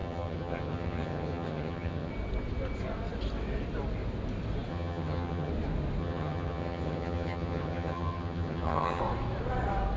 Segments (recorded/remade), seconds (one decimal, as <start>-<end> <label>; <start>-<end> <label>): 0.0-2.1 remade; 2.1-4.7 recorded; 4.7-5.5 remade; 5.5-6.0 recorded; 6.0-9.0 remade; 9.0-10.0 recorded